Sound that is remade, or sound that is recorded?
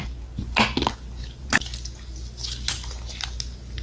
recorded